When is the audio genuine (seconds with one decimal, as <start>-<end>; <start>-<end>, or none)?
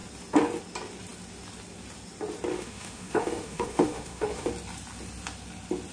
0.0-2.5; 4.5-5.9